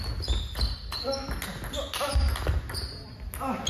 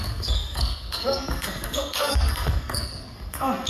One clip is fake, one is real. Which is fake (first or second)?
second